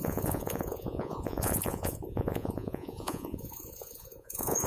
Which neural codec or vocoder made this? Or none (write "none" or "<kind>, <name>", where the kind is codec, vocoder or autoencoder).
vocoder, Vocos